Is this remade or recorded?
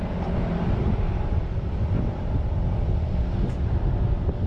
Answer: remade